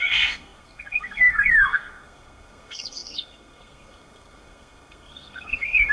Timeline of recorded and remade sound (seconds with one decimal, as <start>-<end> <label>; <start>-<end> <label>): 0.0-5.9 remade